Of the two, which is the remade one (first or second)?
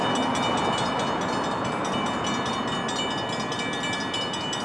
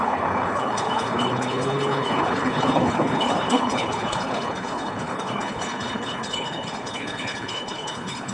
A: second